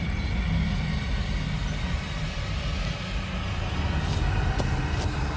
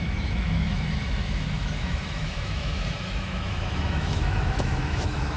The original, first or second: first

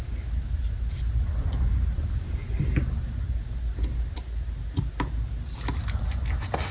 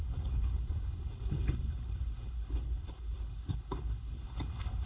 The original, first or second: first